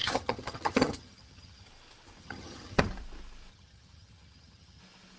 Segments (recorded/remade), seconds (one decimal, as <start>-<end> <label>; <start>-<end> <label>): 0.0-1.7 remade; 1.7-2.2 recorded; 2.2-2.8 remade; 2.8-3.5 recorded; 3.5-4.8 remade; 4.8-5.2 recorded

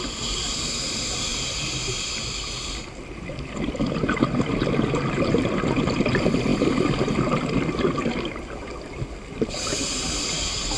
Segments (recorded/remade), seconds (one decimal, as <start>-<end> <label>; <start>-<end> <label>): 0.0-10.8 recorded

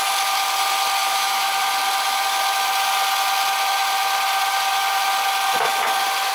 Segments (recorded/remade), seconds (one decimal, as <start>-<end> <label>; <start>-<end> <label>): 0.0-1.0 recorded; 1.0-1.5 remade; 1.5-6.3 recorded

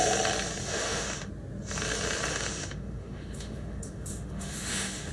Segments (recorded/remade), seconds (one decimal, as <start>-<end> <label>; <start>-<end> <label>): 0.0-0.6 recorded; 0.6-1.3 remade; 1.3-2.3 recorded; 2.3-5.1 remade

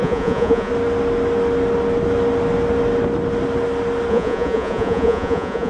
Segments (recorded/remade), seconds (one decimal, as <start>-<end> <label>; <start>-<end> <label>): 0.0-0.7 remade; 0.7-4.1 recorded; 4.1-5.7 remade